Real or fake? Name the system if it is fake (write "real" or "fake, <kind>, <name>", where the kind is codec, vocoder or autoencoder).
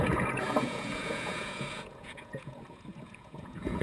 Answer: fake, vocoder, Vocos